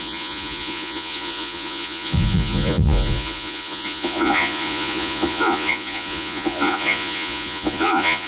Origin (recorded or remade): remade